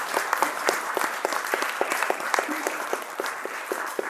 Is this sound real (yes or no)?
no